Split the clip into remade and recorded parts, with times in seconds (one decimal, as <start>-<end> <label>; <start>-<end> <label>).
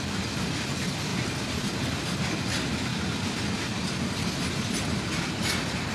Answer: 0.0-5.9 recorded